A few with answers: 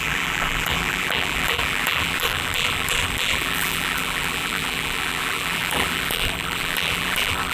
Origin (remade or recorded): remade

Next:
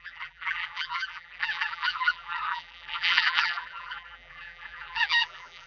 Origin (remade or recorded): remade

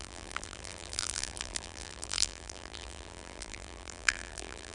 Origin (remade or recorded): remade